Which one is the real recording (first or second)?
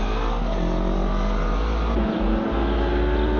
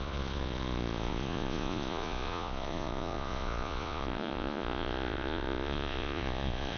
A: first